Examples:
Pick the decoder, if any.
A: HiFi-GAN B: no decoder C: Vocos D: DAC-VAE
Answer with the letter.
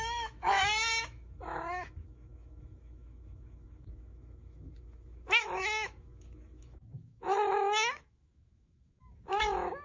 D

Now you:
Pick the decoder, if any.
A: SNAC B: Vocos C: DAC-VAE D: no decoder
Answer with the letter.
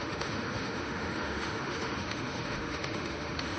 C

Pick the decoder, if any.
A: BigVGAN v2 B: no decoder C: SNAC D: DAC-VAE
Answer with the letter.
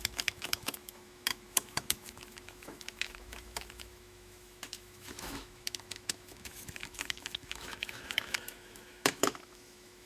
D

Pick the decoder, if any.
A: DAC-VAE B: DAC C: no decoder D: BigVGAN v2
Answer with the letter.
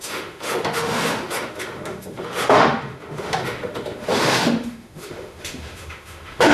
A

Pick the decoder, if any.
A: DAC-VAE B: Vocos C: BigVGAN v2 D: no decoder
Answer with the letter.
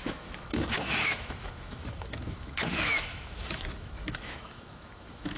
A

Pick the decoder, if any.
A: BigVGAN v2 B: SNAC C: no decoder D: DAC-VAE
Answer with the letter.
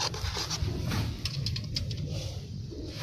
C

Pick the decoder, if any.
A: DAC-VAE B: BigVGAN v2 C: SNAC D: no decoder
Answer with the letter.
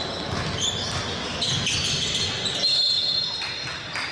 D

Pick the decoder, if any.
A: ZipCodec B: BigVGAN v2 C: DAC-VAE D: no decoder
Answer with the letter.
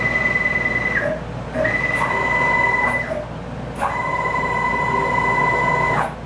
D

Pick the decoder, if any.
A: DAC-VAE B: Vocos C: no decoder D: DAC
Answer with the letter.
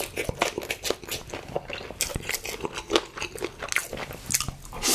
C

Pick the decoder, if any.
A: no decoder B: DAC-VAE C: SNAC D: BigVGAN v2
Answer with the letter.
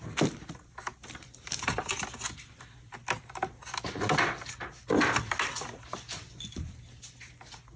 A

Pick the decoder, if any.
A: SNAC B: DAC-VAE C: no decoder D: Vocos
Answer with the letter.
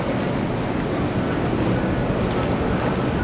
C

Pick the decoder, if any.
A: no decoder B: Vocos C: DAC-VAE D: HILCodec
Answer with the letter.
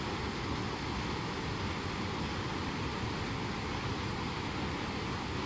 A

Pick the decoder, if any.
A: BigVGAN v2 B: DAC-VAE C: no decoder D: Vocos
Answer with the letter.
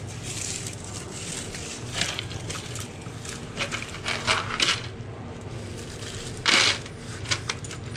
C